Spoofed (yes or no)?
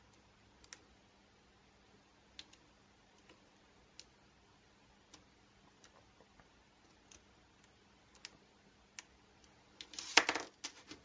no